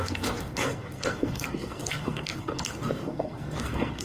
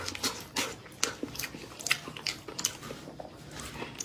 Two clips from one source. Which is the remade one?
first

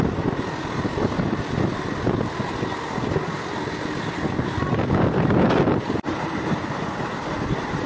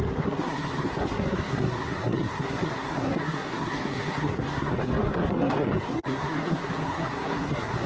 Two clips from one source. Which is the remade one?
second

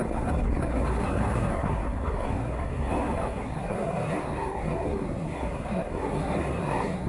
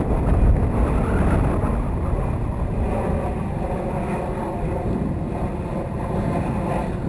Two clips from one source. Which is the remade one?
first